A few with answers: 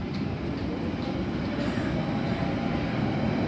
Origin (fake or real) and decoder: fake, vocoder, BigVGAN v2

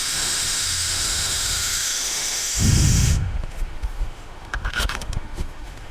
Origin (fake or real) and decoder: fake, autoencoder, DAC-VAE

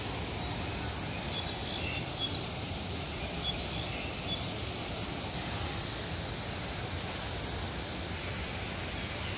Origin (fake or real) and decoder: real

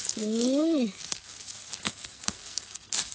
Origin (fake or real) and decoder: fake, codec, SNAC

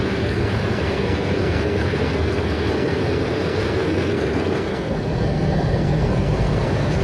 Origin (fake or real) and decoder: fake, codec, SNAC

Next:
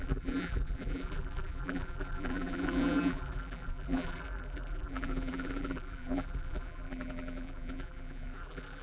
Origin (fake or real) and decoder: fake, vocoder, BigVGAN v2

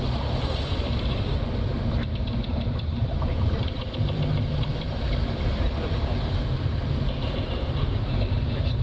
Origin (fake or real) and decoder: fake, vocoder, BigVGAN v2